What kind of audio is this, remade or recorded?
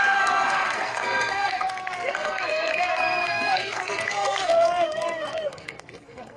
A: remade